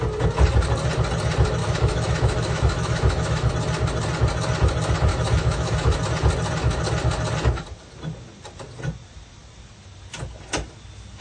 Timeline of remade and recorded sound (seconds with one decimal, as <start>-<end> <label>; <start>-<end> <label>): 0.0-1.6 recorded; 1.6-3.5 remade; 3.5-5.1 recorded; 5.1-6.0 remade; 6.0-11.2 recorded